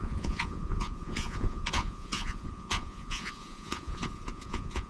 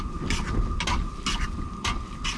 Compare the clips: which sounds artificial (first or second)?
first